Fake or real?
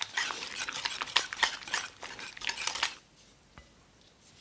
real